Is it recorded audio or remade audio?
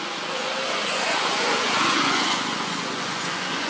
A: remade